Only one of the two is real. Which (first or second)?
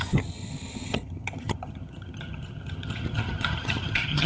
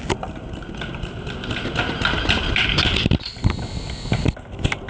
second